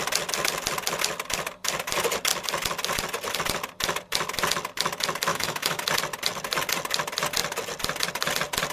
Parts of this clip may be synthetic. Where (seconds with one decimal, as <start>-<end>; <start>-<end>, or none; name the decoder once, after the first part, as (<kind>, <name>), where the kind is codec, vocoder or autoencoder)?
5.3-5.9 (autoencoder, DAC-VAE)